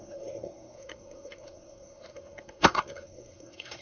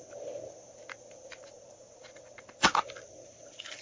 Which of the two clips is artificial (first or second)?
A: first